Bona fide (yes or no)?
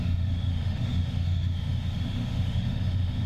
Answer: no